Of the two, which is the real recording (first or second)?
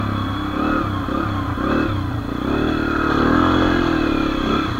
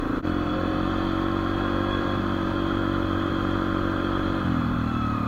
first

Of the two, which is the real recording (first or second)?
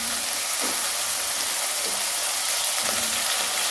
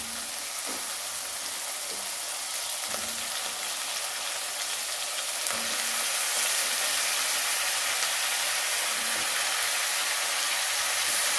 second